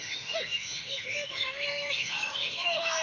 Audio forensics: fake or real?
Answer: fake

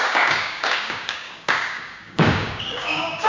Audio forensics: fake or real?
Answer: fake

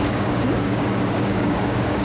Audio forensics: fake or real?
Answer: fake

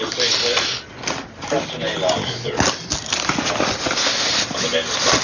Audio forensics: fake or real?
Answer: real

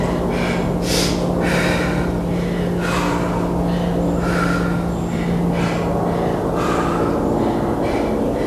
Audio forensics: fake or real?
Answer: real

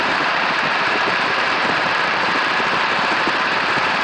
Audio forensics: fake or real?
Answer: fake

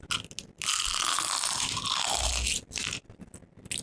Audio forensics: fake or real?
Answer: real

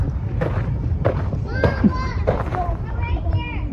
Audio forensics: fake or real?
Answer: fake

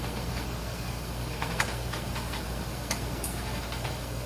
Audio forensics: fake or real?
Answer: fake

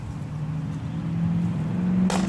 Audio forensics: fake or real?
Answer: real